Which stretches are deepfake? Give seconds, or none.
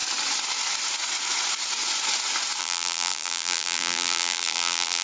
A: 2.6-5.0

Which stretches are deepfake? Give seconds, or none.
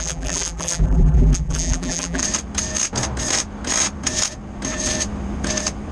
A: 0.0-2.2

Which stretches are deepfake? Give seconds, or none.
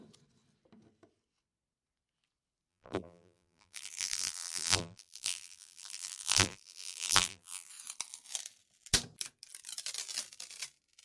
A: 2.7-7.7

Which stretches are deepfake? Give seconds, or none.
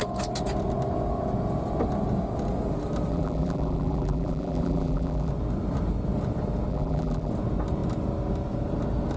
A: 3.1-5.3; 6.7-7.3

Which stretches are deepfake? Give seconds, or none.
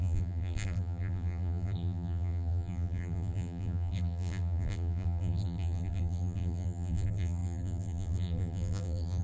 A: 0.0-9.2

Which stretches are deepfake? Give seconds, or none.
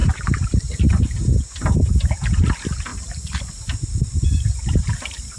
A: 0.0-1.0; 2.9-4.6